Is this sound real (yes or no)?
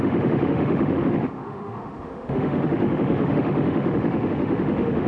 no